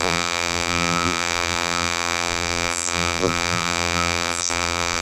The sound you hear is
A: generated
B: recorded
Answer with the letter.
A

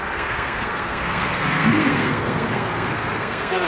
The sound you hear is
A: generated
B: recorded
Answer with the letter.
A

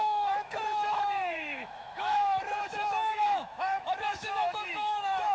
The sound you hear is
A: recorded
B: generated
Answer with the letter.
B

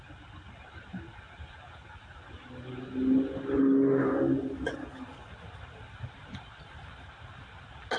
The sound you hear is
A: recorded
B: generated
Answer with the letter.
A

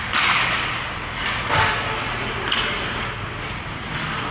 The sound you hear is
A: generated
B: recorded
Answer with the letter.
B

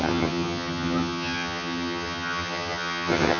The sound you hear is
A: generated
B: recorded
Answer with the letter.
A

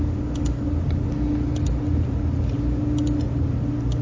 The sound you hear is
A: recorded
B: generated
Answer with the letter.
A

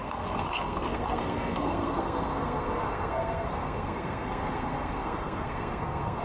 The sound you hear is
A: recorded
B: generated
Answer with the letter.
B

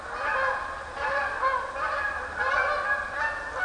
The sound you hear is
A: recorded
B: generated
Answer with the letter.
A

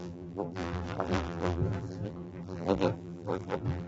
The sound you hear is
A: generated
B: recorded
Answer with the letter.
A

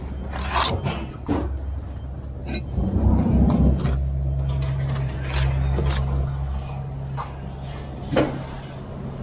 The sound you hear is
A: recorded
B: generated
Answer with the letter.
A